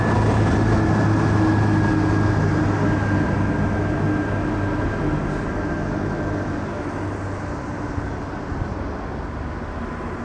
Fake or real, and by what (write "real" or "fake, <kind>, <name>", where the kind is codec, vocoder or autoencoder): real